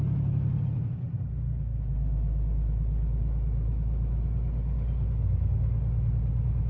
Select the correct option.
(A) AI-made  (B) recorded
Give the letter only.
B